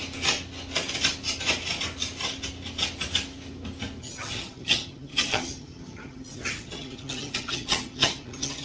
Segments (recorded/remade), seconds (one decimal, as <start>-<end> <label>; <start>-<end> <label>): 0.0-4.0 recorded; 4.0-8.6 remade